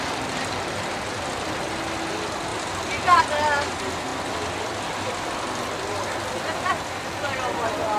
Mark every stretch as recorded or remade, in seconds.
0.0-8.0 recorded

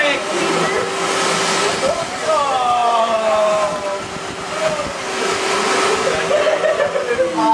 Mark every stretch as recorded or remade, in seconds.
0.0-7.5 recorded

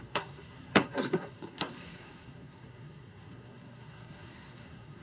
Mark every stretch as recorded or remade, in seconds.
0.0-5.0 remade

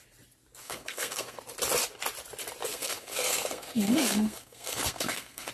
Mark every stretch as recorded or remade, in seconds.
0.0-0.6 recorded; 0.6-1.4 remade; 1.4-2.7 recorded; 2.7-5.5 remade